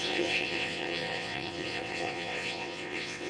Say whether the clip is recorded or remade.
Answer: remade